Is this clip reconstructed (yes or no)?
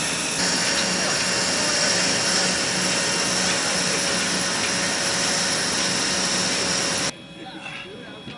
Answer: no